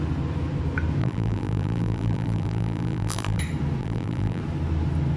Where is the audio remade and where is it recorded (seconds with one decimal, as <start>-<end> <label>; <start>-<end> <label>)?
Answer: 0.0-1.0 recorded; 1.0-3.4 remade; 3.4-3.8 recorded; 3.8-4.4 remade; 4.4-5.2 recorded